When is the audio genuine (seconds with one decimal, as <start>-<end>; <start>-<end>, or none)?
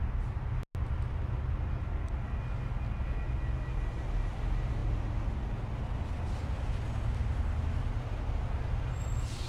0.0-9.5